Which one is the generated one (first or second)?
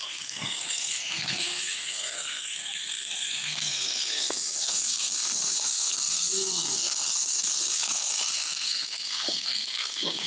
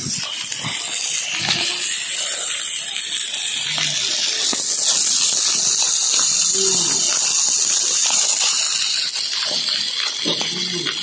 first